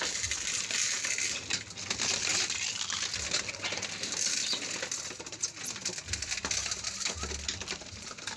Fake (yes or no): no